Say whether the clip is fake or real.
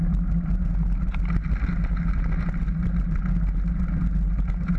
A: real